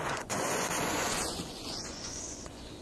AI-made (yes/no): yes